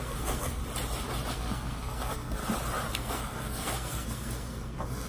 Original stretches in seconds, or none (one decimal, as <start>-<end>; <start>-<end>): 0.6-1.3; 2.4-2.9

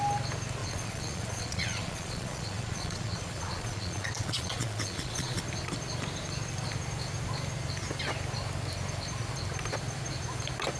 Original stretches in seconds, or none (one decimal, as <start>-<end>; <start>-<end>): 0.0-0.6; 5.4-10.8

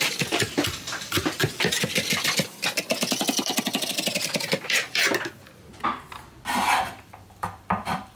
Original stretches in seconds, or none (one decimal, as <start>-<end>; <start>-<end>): 5.7-6.3

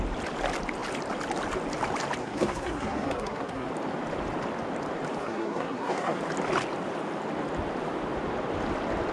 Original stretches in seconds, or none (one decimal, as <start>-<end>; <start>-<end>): 0.0-2.2; 3.7-5.2; 6.2-9.1

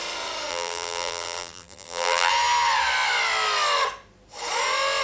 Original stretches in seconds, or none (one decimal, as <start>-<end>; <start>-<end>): 0.0-0.5; 2.3-5.0

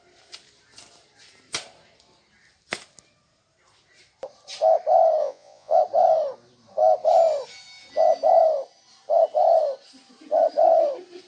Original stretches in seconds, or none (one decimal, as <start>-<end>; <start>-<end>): 0.0-5.2; 5.8-11.3